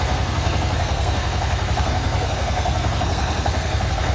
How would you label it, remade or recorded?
remade